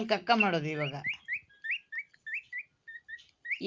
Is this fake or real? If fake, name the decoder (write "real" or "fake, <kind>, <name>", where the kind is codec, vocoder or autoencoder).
real